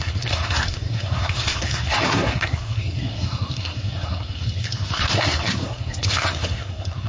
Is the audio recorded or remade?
remade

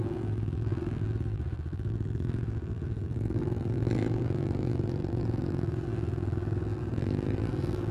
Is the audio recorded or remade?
remade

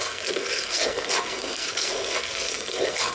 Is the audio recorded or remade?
remade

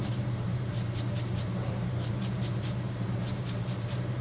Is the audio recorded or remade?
remade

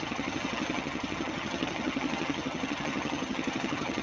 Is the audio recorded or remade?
remade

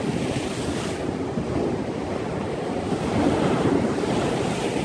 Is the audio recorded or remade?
recorded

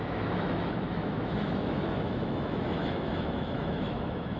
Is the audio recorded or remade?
remade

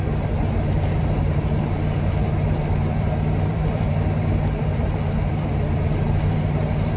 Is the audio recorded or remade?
remade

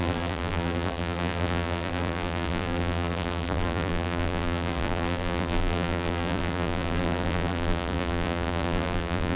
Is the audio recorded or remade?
remade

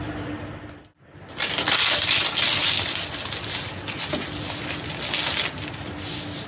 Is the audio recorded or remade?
recorded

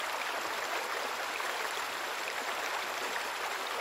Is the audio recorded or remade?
recorded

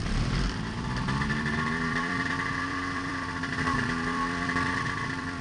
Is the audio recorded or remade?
remade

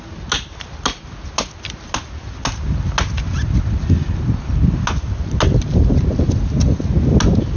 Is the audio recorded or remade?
recorded